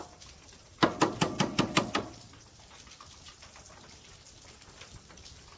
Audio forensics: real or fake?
real